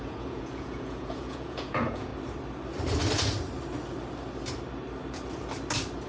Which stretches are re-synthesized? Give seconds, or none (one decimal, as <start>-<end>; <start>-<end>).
0.0-2.1